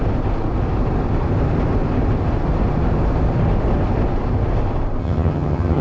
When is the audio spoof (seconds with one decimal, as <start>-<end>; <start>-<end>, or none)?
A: 5.0-5.8